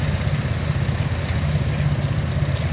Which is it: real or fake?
real